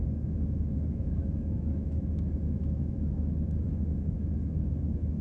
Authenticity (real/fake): fake